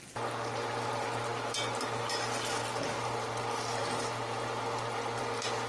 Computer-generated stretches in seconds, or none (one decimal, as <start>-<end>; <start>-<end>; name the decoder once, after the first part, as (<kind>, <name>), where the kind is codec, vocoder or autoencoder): none